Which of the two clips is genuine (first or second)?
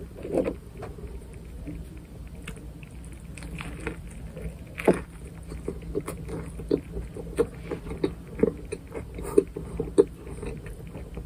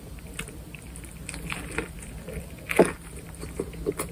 first